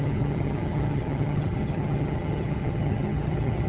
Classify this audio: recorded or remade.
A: remade